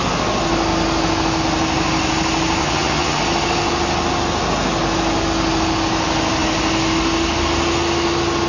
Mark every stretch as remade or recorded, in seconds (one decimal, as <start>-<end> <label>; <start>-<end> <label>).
0.0-2.6 recorded; 2.6-3.2 remade; 3.2-8.5 recorded